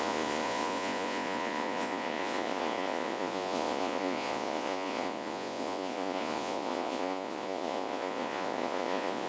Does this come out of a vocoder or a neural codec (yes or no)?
yes